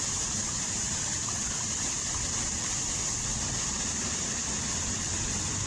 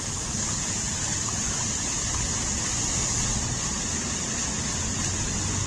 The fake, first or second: first